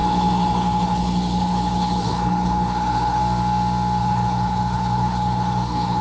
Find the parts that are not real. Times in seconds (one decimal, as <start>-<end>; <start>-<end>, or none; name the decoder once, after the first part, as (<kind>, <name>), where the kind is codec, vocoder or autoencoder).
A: 0.0-3.2 (codec, HILCodec); 4.0-6.0

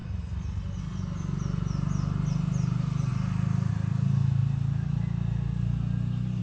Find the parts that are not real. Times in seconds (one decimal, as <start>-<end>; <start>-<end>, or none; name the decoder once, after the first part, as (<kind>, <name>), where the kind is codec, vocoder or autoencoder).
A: none

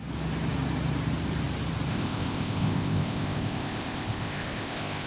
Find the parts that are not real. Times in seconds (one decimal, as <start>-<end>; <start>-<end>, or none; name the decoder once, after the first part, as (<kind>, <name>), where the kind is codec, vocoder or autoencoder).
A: 1.9-5.1 (codec, ZipCodec)

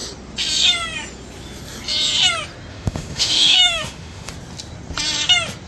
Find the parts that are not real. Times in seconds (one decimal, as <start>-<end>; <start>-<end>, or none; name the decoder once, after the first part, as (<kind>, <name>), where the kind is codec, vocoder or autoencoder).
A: 2.7-4.3 (autoencoder, DAC-VAE)

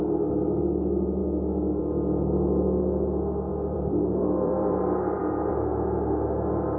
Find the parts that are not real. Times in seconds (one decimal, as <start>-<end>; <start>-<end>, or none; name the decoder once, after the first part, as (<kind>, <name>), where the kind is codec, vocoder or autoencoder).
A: 3.5-5.5 (vocoder, BigVGAN v2)

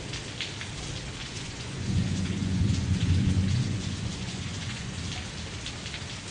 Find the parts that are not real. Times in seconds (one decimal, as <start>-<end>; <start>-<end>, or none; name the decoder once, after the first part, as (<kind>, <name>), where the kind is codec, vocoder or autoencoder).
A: 1.2-5.0 (vocoder, Vocos)

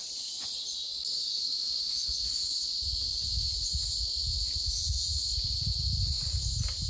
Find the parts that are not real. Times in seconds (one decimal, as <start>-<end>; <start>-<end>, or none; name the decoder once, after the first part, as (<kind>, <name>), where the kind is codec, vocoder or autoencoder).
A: 0.7-2.6 (autoencoder, DAC-VAE)